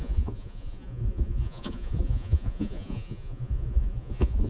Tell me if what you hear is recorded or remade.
remade